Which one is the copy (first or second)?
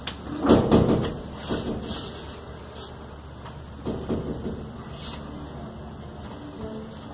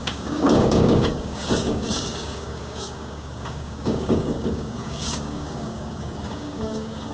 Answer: second